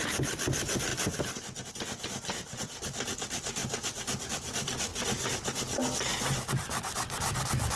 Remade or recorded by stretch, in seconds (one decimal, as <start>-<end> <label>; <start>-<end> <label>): 0.0-3.6 remade; 3.6-4.2 recorded; 4.2-4.9 remade; 4.9-6.5 recorded; 6.5-7.8 remade